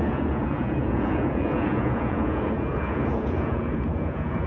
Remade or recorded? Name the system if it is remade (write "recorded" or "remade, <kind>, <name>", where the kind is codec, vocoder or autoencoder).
remade, vocoder, Vocos